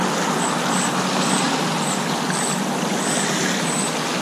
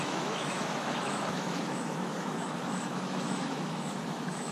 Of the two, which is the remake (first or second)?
second